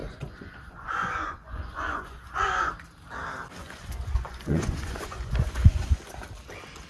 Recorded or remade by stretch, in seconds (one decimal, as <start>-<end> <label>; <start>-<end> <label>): 0.0-2.7 remade; 2.7-3.6 recorded; 3.6-6.1 remade; 6.1-6.9 recorded